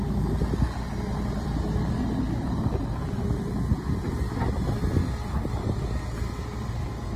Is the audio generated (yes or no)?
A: no